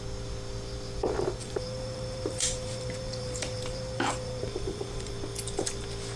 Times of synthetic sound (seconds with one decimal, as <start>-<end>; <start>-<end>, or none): 1.4-5.1